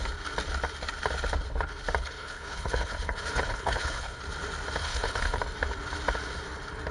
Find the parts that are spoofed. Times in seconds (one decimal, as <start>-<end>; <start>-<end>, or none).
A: 2.0-4.2; 4.8-5.4